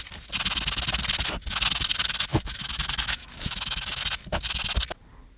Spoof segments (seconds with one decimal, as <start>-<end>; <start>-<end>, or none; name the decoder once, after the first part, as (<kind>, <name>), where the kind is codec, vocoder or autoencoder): 2.3-4.0 (autoencoder, DAC-VAE)